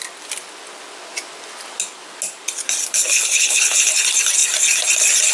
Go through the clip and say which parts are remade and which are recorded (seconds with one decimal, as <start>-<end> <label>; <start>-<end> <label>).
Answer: 0.0-2.8 recorded; 2.8-3.9 remade; 3.9-5.3 recorded